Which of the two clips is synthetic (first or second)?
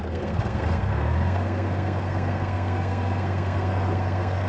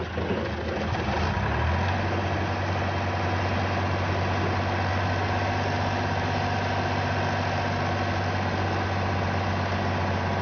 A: first